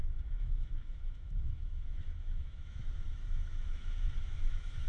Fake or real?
fake